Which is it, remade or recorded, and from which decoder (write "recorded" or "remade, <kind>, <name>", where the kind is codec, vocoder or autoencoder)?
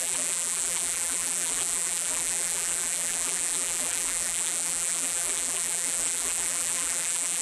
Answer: remade, vocoder, BigVGAN v2